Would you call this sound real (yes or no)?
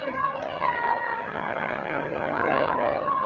no